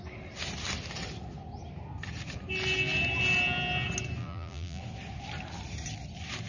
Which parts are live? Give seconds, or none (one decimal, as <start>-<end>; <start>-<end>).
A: 0.0-4.2; 4.8-6.5